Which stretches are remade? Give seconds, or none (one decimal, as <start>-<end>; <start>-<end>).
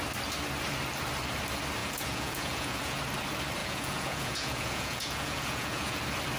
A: 1.8-3.0; 3.6-6.0